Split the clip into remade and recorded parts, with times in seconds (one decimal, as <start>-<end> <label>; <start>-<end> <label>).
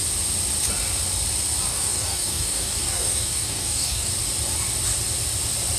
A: 0.0-1.7 recorded; 1.7-4.1 remade; 4.1-5.8 recorded